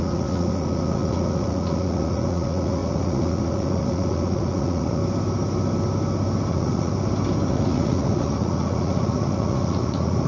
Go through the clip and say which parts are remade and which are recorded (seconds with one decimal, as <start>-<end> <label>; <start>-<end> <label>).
0.0-5.0 remade; 5.0-6.5 recorded; 6.5-6.9 remade; 6.9-7.5 recorded; 7.5-10.3 remade